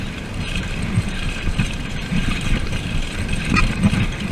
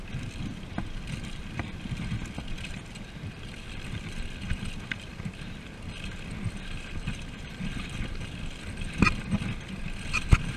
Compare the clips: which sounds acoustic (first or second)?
second